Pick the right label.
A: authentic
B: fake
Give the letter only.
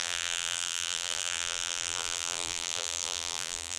B